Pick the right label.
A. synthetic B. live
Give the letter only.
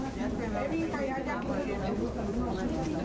B